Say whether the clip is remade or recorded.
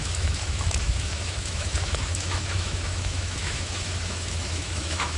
remade